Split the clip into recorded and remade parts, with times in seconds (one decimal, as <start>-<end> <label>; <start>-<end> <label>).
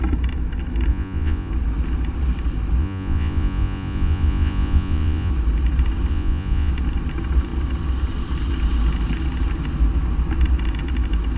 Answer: 0.0-0.9 recorded; 0.9-1.5 remade; 1.5-2.8 recorded; 2.8-5.3 remade; 5.3-6.1 recorded; 6.1-6.7 remade; 6.7-11.4 recorded